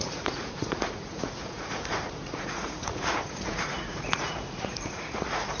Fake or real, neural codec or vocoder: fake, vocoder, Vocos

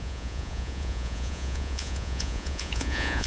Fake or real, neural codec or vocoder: fake, vocoder, Vocos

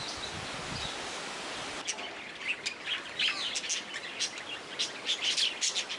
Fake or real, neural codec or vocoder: real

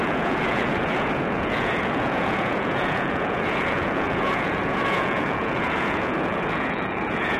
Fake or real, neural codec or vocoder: fake, vocoder, Vocos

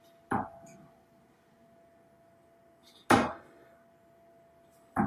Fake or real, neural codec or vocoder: real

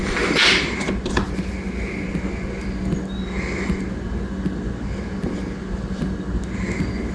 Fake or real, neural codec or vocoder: real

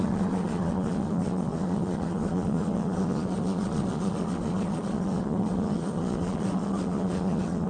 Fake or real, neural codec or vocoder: fake, vocoder, Vocos